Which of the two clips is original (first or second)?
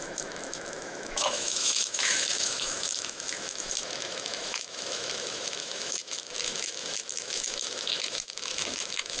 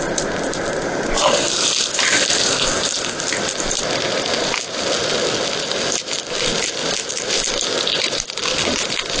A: second